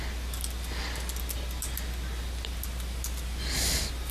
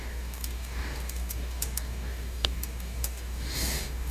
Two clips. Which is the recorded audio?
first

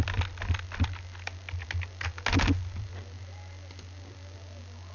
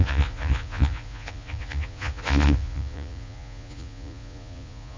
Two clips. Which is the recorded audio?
first